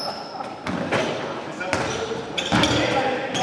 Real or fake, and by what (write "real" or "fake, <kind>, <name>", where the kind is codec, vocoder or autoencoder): real